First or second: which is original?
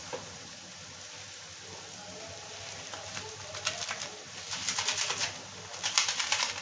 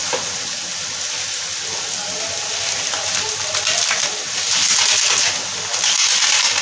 second